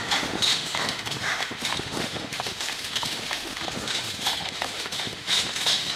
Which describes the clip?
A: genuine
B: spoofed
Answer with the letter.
B